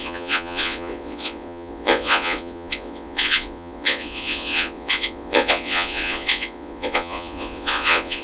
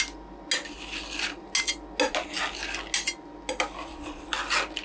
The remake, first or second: first